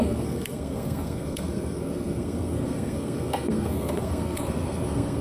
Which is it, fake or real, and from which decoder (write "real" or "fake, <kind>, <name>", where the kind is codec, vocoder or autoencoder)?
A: fake, codec, SNAC